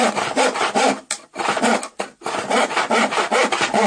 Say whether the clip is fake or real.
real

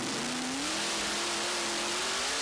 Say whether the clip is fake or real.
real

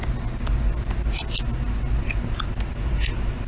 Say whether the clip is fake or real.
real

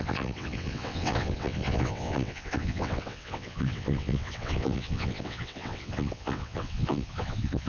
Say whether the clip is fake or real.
fake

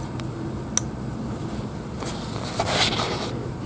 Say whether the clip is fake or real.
real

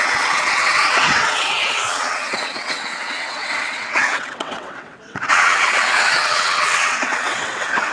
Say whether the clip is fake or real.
fake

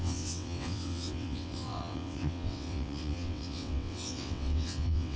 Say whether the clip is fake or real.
fake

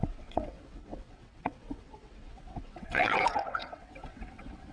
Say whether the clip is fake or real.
fake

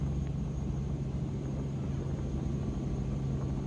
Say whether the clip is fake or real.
real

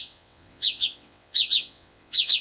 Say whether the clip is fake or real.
fake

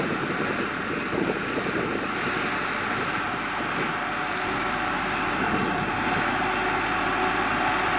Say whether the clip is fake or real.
real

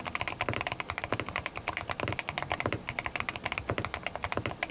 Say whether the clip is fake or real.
real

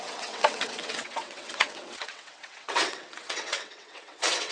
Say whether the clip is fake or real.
fake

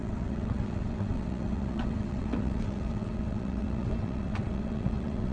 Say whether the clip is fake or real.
fake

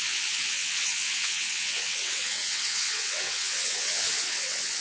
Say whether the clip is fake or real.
fake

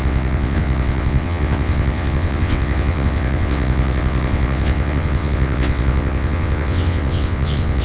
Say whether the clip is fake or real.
fake